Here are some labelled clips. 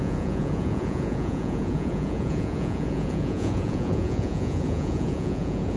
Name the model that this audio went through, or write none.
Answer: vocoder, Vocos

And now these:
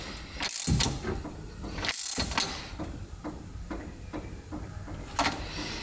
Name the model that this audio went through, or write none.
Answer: none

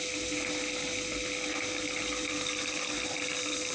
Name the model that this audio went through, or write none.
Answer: none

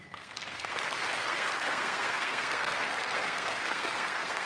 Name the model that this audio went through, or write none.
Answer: codec, SNAC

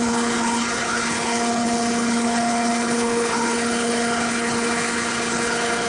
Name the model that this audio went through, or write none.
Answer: codec, HILCodec